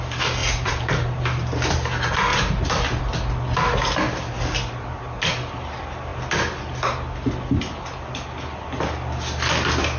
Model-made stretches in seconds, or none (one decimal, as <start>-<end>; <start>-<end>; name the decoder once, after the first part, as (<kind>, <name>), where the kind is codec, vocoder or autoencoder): 0.4-1.2 (vocoder, BigVGAN v2); 2.3-3.0